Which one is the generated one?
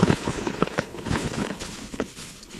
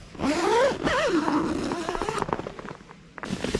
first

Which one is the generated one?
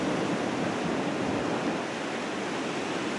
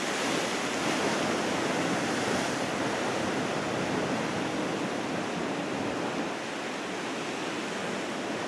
first